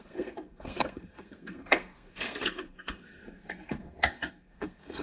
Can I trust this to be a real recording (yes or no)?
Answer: no